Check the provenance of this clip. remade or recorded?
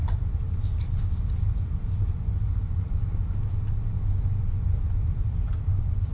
recorded